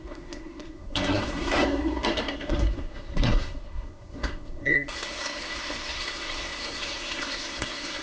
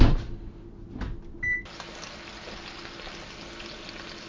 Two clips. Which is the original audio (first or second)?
second